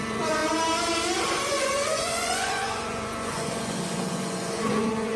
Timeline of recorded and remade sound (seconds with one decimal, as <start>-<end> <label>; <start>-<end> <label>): 0.0-0.4 remade; 0.4-1.5 recorded; 1.5-5.2 remade